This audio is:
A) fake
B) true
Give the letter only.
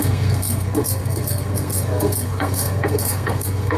A